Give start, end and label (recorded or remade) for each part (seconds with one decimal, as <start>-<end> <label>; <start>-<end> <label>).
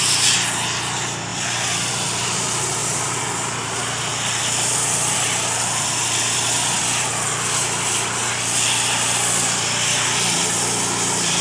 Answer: 0.0-1.3 recorded; 1.3-1.9 remade; 1.9-11.4 recorded